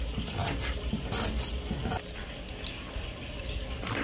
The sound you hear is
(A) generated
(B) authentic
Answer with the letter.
B